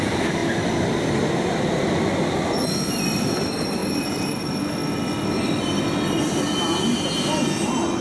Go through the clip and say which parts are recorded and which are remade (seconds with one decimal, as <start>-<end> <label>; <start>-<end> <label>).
0.0-8.0 recorded